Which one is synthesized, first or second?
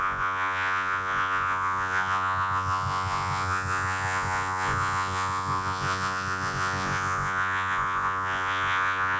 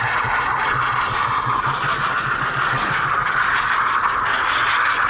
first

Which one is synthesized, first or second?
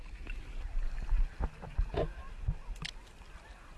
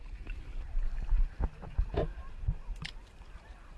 second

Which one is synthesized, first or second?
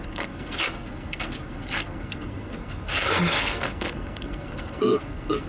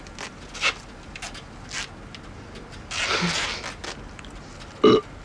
first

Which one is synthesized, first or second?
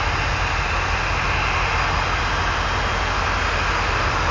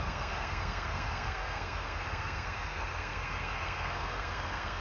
second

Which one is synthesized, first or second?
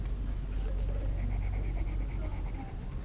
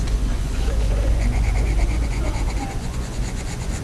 second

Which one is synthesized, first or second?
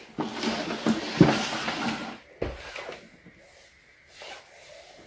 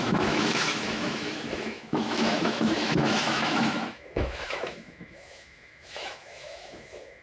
second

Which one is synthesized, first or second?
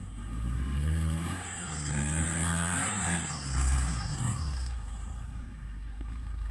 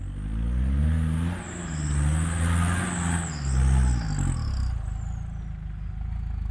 first